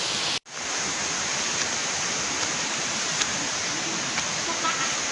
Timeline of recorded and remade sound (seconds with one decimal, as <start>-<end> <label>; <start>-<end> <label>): 0.0-1.8 recorded; 1.8-4.1 remade; 4.1-5.1 recorded